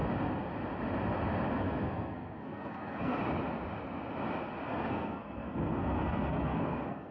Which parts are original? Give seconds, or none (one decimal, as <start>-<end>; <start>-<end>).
0.0-1.5; 3.2-4.7